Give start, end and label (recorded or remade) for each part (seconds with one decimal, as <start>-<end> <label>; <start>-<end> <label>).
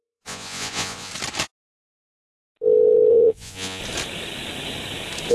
0.0-1.1 remade; 1.1-3.1 recorded; 3.1-3.8 remade; 3.8-5.3 recorded